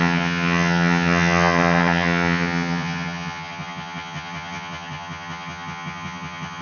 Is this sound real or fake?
fake